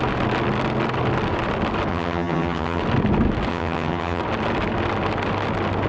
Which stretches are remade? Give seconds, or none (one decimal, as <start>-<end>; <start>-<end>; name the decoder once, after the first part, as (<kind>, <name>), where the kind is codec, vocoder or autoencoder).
1.9-2.8 (vocoder, HiFi-GAN); 3.5-4.2